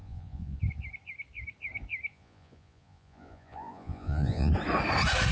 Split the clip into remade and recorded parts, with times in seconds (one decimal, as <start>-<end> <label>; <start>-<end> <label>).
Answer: 0.0-0.6 remade; 0.6-2.1 recorded; 2.1-4.5 remade; 4.5-5.3 recorded